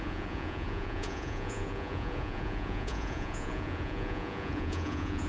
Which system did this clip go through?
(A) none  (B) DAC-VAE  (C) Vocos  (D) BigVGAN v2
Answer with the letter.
C